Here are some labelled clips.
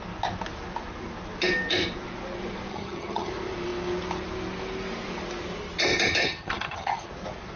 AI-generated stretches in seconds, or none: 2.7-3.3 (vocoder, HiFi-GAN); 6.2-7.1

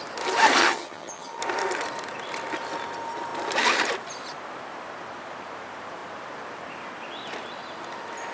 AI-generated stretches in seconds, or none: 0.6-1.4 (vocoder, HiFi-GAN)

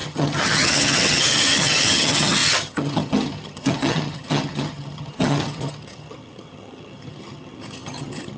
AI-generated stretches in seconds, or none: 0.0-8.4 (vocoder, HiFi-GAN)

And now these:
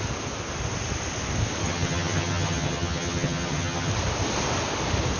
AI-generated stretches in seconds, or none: 1.6-3.9 (vocoder, HiFi-GAN)

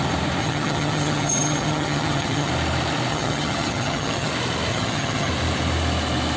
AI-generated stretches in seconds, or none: 0.4-2.5 (vocoder, HiFi-GAN); 3.1-4.3; 4.7-5.3

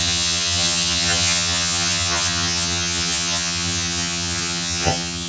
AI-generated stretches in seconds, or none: 0.0-5.3 (vocoder, HiFi-GAN)